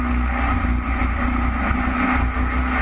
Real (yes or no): yes